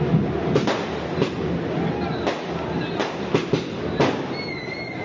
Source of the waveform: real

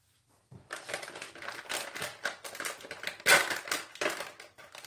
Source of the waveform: real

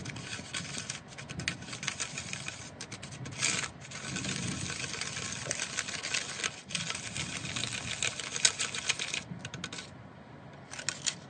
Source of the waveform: real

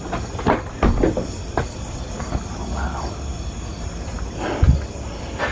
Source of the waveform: real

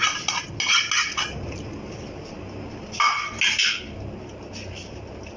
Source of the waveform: real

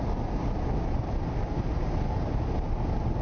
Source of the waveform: real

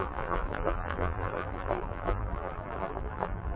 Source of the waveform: fake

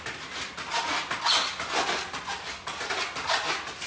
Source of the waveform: real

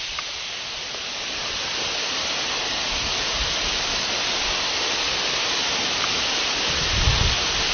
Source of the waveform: real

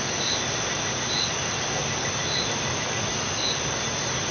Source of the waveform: real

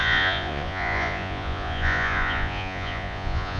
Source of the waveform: fake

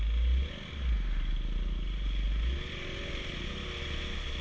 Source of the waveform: real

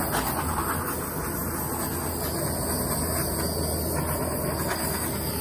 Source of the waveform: real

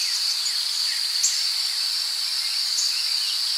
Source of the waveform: real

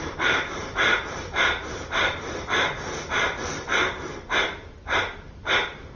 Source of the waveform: fake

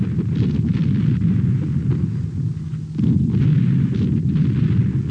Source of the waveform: real